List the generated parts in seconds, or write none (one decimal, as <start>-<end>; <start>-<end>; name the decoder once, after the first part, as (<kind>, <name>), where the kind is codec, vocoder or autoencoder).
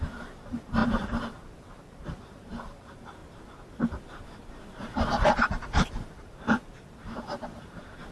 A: 0.0-3.2 (vocoder, BigVGAN v2); 4.7-8.1